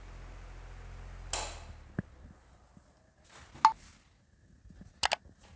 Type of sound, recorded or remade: recorded